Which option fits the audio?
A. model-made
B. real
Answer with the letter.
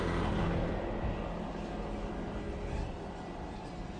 B